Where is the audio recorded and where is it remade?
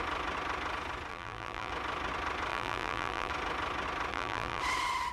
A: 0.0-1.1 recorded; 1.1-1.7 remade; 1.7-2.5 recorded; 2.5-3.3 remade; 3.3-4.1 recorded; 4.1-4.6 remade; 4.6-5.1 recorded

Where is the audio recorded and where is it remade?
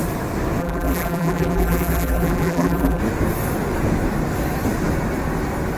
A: 0.0-0.6 recorded; 0.6-3.0 remade; 3.0-5.8 recorded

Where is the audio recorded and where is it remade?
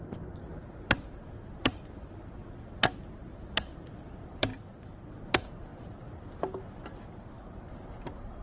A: 0.0-2.4 remade; 2.4-4.0 recorded; 4.0-4.5 remade; 4.5-5.1 recorded; 5.1-5.7 remade; 5.7-7.0 recorded; 7.0-8.4 remade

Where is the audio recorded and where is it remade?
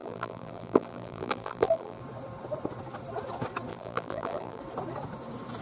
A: 0.0-2.0 remade; 2.0-3.7 recorded; 3.7-4.6 remade; 4.6-5.6 recorded